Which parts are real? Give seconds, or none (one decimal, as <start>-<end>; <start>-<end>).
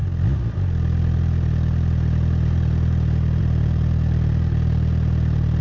0.0-5.6